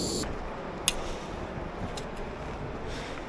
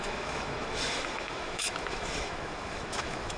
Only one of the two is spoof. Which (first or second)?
second